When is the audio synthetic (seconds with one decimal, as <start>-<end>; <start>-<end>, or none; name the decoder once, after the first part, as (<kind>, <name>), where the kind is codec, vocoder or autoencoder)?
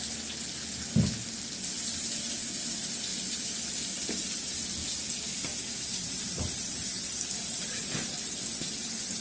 3.1-3.6 (vocoder, BigVGAN v2); 5.5-7.4